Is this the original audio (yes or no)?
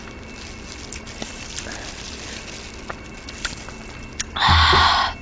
yes